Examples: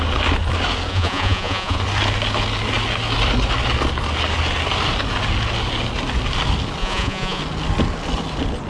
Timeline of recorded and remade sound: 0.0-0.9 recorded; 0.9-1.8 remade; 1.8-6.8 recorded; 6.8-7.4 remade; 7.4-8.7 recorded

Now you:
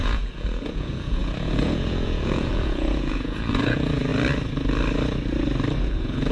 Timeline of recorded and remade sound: 0.0-4.1 remade; 4.1-5.8 recorded; 5.8-6.3 remade

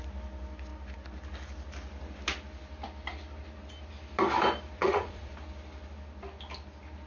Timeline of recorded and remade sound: 0.0-4.8 recorded; 4.8-5.3 remade; 5.3-7.1 recorded

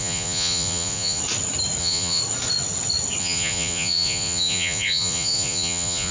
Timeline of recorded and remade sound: 0.0-1.2 remade; 1.2-1.8 recorded; 1.8-2.2 remade; 2.2-3.2 recorded; 3.2-6.1 remade